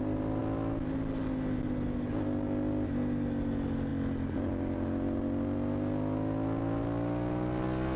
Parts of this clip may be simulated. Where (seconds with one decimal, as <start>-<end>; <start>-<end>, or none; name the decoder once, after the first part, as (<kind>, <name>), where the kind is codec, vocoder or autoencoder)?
none